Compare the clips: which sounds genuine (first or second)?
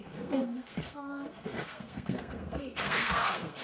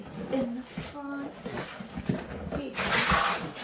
second